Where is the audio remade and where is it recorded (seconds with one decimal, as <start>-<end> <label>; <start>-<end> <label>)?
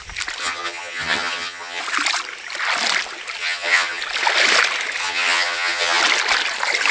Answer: 0.0-0.4 recorded; 0.4-1.8 remade; 1.8-3.4 recorded; 3.4-4.0 remade; 4.0-5.0 recorded; 5.0-6.0 remade; 6.0-6.9 recorded